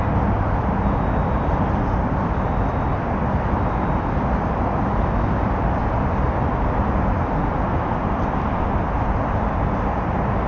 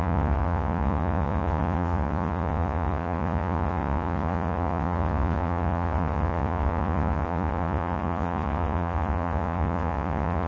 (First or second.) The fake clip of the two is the second